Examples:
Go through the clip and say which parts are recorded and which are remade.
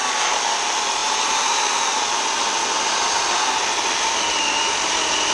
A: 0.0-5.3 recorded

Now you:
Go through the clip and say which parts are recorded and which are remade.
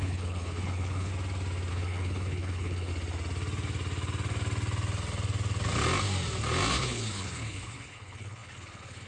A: 0.0-1.1 remade; 1.1-1.7 recorded; 1.7-2.9 remade; 2.9-6.7 recorded; 6.7-9.1 remade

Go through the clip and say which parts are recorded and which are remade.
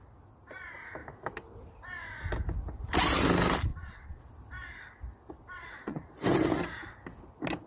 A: 0.0-3.7 recorded; 3.7-4.2 remade; 4.2-5.6 recorded; 5.6-6.2 remade; 6.2-7.7 recorded